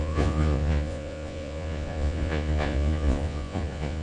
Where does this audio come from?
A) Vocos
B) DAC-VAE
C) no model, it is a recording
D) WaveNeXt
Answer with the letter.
A